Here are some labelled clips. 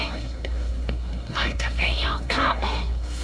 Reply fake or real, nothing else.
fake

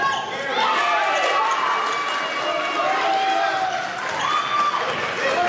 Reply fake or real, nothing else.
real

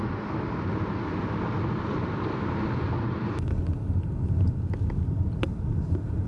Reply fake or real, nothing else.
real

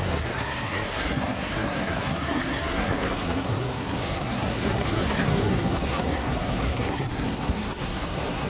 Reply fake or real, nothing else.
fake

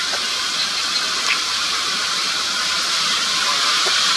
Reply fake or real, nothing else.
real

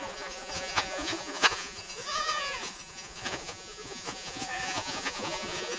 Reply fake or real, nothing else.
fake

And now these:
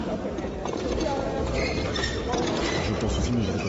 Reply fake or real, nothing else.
fake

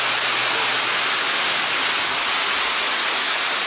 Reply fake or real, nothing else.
real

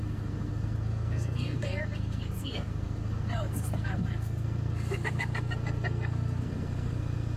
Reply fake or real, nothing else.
fake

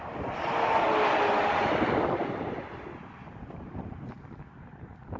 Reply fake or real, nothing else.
real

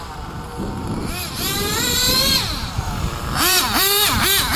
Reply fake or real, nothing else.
fake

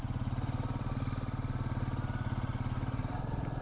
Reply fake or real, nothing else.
real